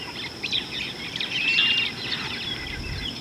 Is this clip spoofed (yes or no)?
no